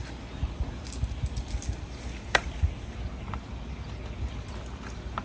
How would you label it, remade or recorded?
recorded